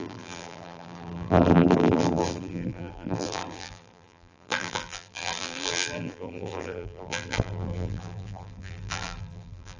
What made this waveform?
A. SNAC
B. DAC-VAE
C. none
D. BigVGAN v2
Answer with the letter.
D